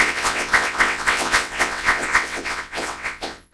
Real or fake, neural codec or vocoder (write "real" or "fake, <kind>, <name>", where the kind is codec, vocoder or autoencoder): fake, vocoder, WaveNeXt